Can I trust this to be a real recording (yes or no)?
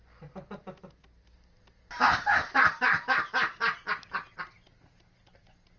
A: yes